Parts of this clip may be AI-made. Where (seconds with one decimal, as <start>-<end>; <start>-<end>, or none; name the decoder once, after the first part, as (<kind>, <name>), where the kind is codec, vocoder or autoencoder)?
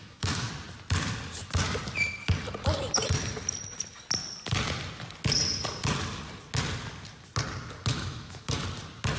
0.0-0.5 (autoencoder, DAC-VAE); 7.9-8.6